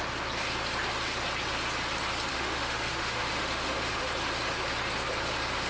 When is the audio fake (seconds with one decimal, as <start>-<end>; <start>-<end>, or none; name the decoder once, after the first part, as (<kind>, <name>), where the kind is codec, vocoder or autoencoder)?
2.3-4.1 (autoencoder, DAC-VAE)